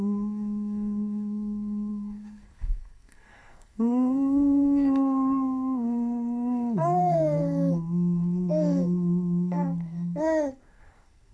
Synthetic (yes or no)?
yes